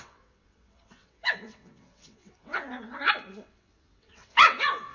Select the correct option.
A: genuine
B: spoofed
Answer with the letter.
B